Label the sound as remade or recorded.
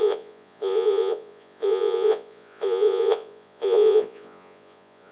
remade